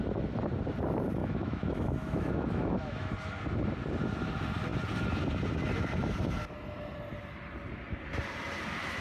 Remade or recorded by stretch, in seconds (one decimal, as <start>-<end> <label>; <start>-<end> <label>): 0.0-1.2 recorded; 1.2-3.1 remade; 3.1-9.0 recorded